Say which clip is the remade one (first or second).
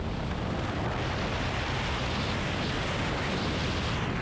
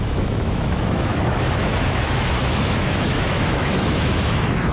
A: second